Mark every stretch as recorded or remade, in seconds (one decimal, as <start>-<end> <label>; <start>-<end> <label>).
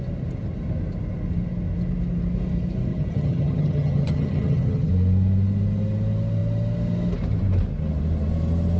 0.0-2.9 recorded; 2.9-4.9 remade; 4.9-8.8 recorded